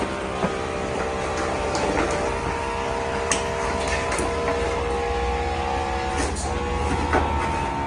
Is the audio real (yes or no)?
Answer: yes